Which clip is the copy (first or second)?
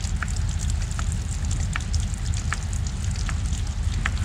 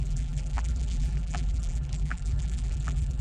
second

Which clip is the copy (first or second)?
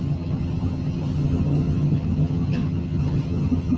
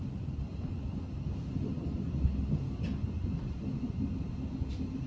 first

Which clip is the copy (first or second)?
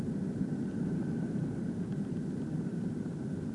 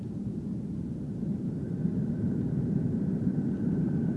second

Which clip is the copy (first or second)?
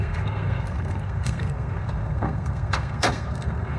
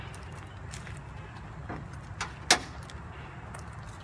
first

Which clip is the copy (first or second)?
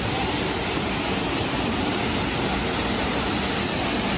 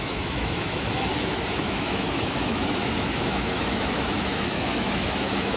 second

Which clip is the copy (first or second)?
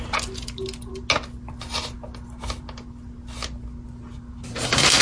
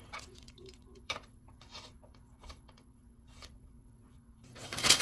second